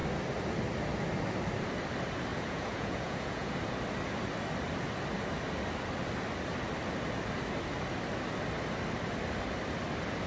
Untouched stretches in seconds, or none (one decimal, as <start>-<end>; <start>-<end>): 0.0-2.3; 3.5-10.3